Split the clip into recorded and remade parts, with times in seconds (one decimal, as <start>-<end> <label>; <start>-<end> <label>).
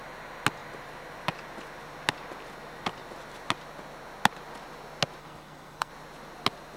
0.0-5.2 recorded; 5.2-5.9 remade; 5.9-6.8 recorded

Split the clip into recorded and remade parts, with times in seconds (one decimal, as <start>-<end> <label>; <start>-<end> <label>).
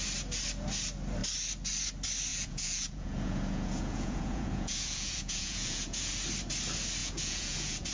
0.0-2.3 recorded; 2.3-6.1 remade; 6.1-7.0 recorded; 7.0-7.9 remade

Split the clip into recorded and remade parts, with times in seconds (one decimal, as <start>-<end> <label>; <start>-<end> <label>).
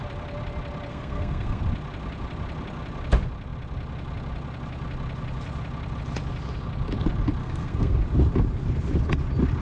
0.0-0.9 recorded; 0.9-1.6 remade; 1.6-7.4 recorded; 7.4-8.0 remade; 8.0-9.6 recorded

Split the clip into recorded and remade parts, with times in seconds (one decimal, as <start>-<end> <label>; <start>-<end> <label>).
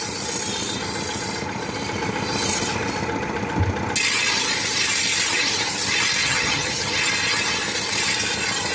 0.0-6.2 recorded; 6.2-7.0 remade; 7.0-8.7 recorded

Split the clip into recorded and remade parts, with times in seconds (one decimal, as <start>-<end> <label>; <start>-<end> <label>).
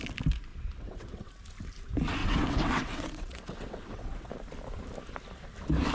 0.0-0.5 recorded; 0.5-1.3 remade; 1.3-2.2 recorded; 2.2-4.3 remade; 4.3-5.9 recorded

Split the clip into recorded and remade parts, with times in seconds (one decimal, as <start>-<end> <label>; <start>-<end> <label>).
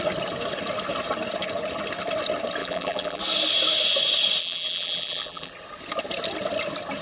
0.0-2.6 recorded; 2.6-3.2 remade; 3.2-4.4 recorded; 4.4-5.5 remade; 5.5-7.0 recorded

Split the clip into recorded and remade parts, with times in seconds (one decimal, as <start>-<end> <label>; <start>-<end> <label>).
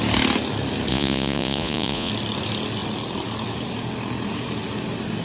0.0-0.9 recorded; 0.9-2.1 remade; 2.1-5.2 recorded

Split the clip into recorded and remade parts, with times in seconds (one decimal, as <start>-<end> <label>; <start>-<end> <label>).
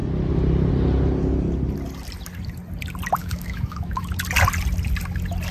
0.0-3.2 recorded; 3.2-4.1 remade; 4.1-5.5 recorded